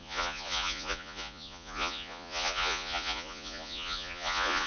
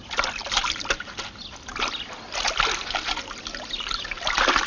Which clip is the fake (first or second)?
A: first